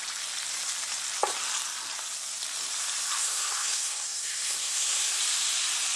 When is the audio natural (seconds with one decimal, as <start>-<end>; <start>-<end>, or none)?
0.0-3.2; 5.2-6.0